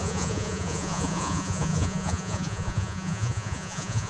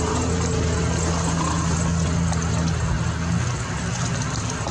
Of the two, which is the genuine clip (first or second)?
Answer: second